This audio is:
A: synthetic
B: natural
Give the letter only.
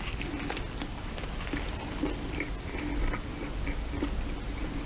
B